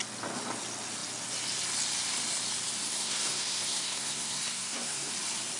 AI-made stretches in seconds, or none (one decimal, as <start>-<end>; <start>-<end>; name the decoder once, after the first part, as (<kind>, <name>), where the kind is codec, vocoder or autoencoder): 2.9-5.1 (codec, SNAC)